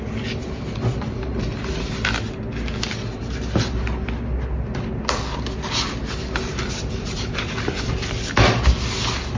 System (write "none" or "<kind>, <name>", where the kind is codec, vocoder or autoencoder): none